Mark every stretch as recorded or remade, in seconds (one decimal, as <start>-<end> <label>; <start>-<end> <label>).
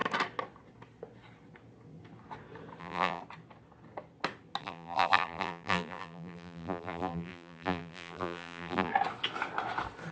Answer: 0.0-2.8 recorded; 2.8-3.2 remade; 3.2-4.6 recorded; 4.6-8.9 remade; 8.9-10.1 recorded